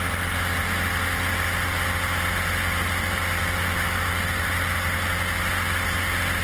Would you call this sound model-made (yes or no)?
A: no